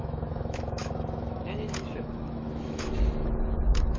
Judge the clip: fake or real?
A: fake